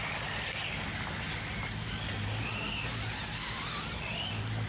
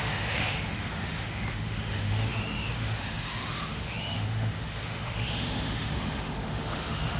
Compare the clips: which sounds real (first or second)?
first